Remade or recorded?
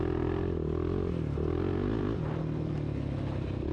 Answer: recorded